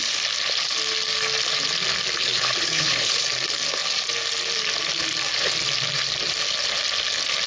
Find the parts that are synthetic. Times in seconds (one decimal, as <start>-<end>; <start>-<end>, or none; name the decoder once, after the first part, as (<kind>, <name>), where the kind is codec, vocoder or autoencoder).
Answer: 2.2-3.2 (codec, HILCodec)